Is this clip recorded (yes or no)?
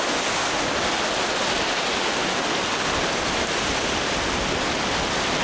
yes